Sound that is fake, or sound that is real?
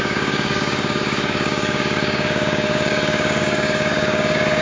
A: fake